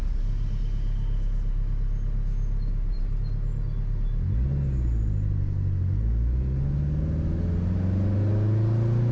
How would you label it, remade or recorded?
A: recorded